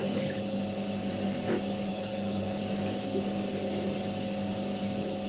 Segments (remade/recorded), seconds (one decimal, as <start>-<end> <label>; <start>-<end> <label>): 0.0-0.6 remade; 0.6-1.9 recorded; 1.9-2.6 remade; 2.6-5.3 recorded